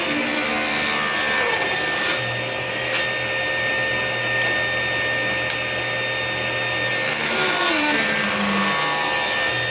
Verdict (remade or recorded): recorded